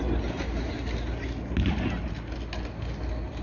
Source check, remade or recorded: recorded